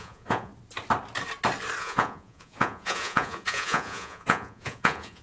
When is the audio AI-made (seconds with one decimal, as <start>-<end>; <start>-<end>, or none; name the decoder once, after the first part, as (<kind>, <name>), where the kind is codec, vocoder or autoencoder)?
0.0-0.5 (vocoder, Vocos); 1.8-5.2